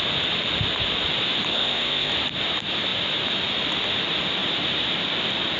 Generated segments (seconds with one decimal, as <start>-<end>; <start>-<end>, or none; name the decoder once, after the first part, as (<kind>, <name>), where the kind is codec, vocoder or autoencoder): 1.5-2.1 (codec, ZipCodec)